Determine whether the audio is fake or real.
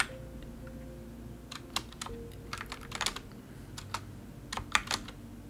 real